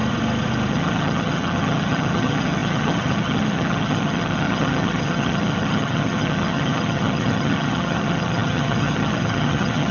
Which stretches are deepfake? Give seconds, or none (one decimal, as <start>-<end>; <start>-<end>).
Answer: 0.7-9.9